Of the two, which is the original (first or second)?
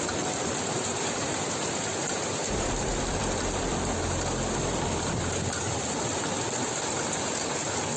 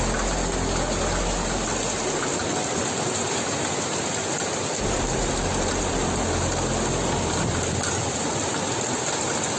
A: second